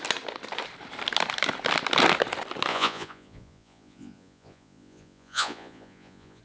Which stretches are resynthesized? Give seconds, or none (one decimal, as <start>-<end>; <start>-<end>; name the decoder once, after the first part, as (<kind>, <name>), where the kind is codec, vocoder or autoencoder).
2.7-6.4 (vocoder, Vocos)